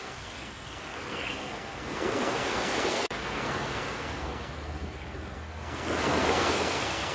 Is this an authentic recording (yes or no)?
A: no